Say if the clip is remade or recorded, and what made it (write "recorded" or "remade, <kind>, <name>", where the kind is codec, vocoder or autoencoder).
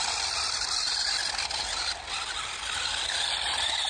recorded